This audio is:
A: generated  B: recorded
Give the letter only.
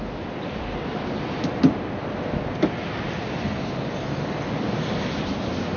B